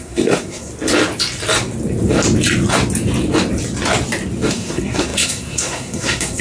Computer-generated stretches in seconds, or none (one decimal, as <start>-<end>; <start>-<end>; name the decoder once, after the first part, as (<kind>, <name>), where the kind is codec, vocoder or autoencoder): 0.0-0.7 (codec, SNAC); 4.5-6.4

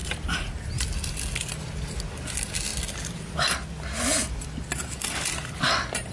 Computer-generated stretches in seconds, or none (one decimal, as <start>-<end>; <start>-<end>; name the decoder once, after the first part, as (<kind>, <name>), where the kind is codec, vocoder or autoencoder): none

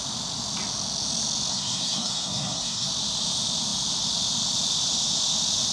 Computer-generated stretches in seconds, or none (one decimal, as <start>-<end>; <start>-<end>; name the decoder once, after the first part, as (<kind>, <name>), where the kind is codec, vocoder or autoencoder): 1.5-2.9 (codec, SNAC)

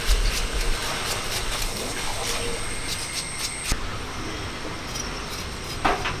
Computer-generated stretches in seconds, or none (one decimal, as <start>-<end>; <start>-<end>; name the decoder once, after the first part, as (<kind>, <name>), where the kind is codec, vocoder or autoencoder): none

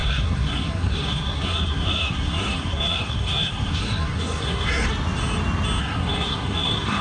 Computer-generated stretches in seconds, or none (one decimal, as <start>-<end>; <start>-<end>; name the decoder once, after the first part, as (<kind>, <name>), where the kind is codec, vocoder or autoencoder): 0.0-4.9 (codec, SNAC); 5.8-7.0

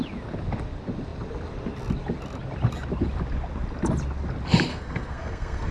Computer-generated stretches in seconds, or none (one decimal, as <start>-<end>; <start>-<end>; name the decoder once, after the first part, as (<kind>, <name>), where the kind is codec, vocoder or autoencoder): 4.7-5.7 (codec, SNAC)

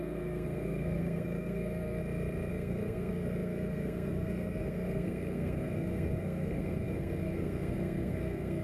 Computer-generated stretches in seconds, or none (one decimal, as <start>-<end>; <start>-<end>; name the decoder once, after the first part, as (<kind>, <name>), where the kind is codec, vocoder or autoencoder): 0.0-2.0 (codec, SNAC); 2.5-8.6

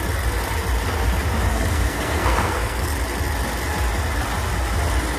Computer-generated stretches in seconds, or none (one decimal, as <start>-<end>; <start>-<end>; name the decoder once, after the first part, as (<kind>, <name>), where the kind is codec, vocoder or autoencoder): 1.5-2.9 (codec, SNAC)